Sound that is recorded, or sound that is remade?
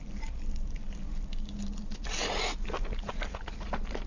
recorded